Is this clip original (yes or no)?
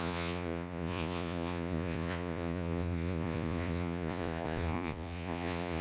no